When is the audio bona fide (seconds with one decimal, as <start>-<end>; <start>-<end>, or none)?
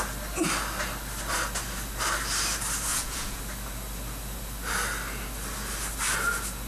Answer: 0.0-2.9; 3.4-6.7